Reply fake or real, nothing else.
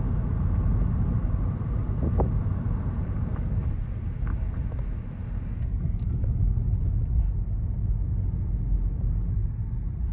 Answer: real